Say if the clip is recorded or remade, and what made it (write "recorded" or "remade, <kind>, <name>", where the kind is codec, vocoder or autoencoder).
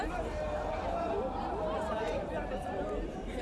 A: remade, vocoder, BigVGAN v2